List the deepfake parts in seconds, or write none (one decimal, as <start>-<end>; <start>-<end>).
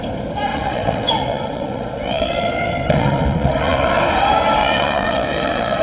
0.5-4.0; 4.6-5.8